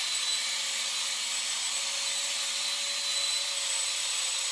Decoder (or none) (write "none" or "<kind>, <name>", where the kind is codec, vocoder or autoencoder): vocoder, BigVGAN v2